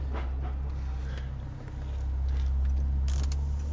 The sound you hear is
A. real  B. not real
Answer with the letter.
A